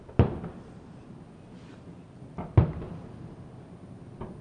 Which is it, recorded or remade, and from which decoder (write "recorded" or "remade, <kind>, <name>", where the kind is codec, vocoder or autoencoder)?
recorded